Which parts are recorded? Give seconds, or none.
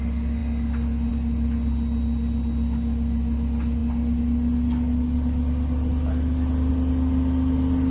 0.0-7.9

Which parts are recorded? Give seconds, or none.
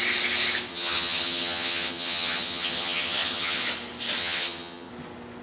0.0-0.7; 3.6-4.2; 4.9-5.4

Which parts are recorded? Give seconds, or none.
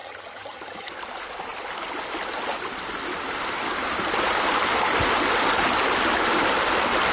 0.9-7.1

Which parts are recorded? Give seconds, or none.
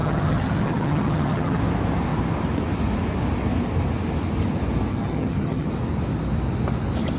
1.6-4.9; 5.7-7.2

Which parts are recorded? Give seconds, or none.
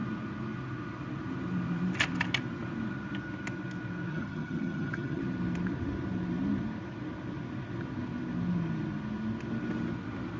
0.0-4.1; 5.2-10.4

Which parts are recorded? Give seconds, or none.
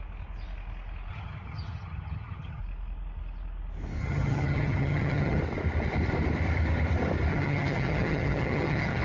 0.0-1.1; 2.6-4.0; 5.4-7.3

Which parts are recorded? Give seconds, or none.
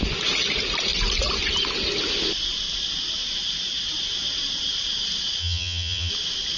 0.0-5.4; 6.1-6.6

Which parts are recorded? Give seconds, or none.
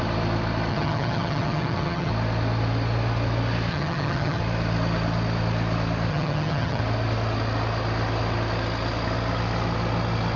0.0-0.7; 2.1-3.7; 4.4-6.1; 6.8-10.4